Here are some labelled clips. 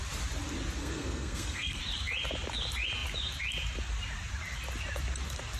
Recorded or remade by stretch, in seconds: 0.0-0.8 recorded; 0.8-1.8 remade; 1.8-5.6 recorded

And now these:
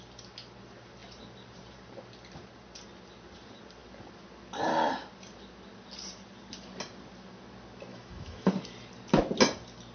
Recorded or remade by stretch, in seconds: 0.0-7.9 recorded; 7.9-8.5 remade; 8.5-9.9 recorded